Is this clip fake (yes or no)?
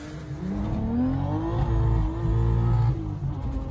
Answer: no